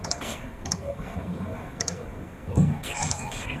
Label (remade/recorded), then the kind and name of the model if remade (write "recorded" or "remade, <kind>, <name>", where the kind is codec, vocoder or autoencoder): remade, codec, SNAC